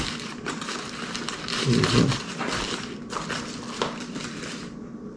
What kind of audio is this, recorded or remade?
recorded